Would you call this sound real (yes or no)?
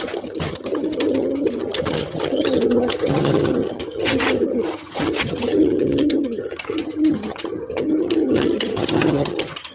no